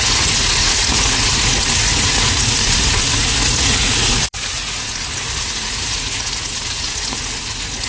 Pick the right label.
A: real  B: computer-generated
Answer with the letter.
B